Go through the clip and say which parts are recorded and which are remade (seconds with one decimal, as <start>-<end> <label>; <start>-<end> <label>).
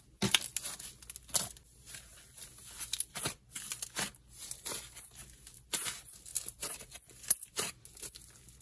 0.0-8.6 recorded